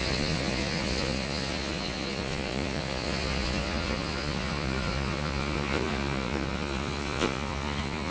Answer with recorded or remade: remade